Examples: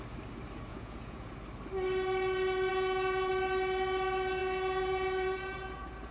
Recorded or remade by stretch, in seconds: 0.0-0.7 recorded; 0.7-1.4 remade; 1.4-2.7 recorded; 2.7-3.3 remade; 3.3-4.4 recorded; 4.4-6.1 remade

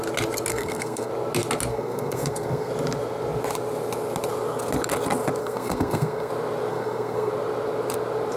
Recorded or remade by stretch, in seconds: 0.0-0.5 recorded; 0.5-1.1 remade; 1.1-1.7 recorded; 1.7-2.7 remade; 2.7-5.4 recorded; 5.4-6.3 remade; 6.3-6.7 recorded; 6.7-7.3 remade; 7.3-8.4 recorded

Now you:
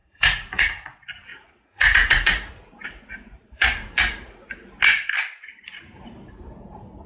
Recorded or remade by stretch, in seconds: 0.0-0.6 remade; 0.6-1.3 recorded; 1.3-4.5 remade; 4.5-7.1 recorded

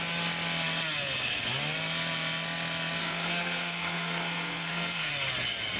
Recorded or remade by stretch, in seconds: 0.0-3.0 recorded; 3.0-5.1 remade; 5.1-5.8 recorded